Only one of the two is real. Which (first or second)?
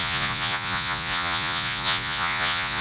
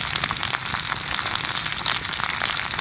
second